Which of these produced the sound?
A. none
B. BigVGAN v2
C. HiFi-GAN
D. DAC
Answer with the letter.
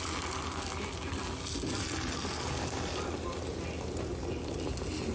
A